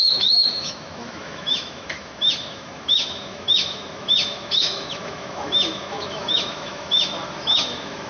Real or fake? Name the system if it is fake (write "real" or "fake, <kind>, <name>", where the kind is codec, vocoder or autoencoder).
fake, autoencoder, DAC-VAE